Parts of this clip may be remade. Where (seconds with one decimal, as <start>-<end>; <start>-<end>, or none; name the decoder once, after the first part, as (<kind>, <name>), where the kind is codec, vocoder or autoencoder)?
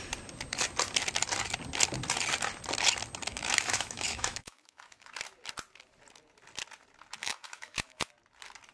3.3-5.1 (autoencoder, DAC-VAE); 7.2-8.1